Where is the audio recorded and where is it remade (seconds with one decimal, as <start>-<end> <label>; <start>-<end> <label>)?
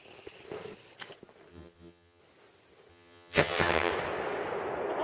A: 0.0-1.5 recorded; 1.5-2.2 remade; 2.2-2.9 recorded; 2.9-3.9 remade; 3.9-5.0 recorded